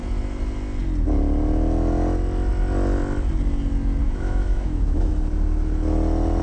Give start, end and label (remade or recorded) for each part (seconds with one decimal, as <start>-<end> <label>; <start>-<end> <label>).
0.0-4.0 recorded; 4.0-5.1 remade; 5.1-6.4 recorded